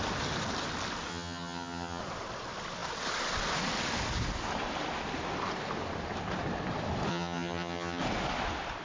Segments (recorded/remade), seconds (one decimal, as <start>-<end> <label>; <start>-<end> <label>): 0.0-1.1 recorded; 1.1-2.0 remade; 2.0-7.1 recorded; 7.1-8.0 remade; 8.0-8.8 recorded